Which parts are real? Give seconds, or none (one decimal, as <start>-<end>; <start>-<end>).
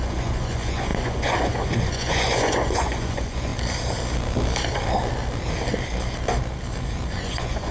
3.5-7.2